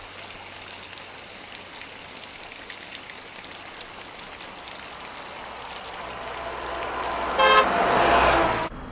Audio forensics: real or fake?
real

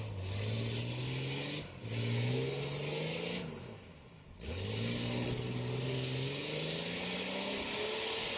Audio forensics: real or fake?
real